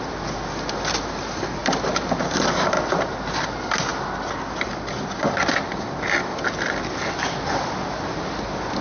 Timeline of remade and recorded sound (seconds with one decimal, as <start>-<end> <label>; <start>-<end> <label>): 0.0-8.8 recorded